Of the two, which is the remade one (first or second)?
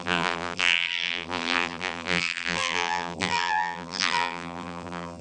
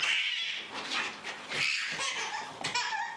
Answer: first